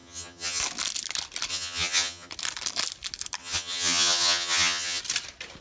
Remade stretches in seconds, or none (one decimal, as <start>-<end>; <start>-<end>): 0.0-0.6; 1.5-2.3; 3.4-5.0